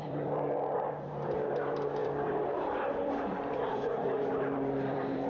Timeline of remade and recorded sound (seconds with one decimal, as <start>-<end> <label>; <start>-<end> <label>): 0.0-5.3 remade